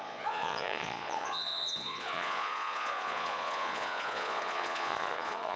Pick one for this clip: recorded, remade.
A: remade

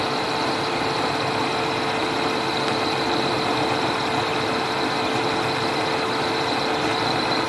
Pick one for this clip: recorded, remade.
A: recorded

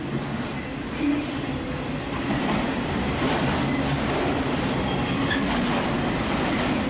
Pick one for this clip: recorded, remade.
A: recorded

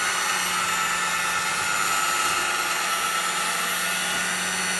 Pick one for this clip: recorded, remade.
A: recorded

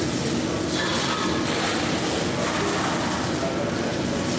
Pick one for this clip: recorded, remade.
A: recorded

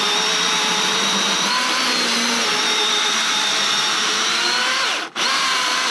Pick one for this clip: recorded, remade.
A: remade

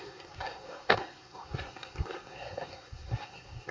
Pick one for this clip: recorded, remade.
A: remade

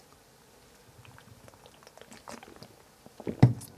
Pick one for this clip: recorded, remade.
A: recorded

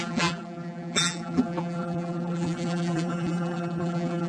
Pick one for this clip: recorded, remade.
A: remade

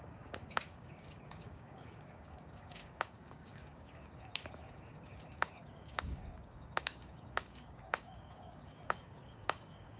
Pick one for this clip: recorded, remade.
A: remade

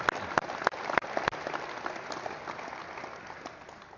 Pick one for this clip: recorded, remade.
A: recorded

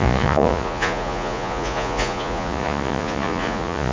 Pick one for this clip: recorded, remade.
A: remade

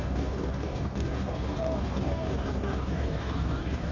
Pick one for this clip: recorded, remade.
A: remade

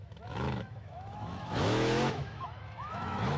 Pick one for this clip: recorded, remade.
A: remade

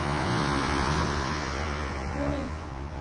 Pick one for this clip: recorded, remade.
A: remade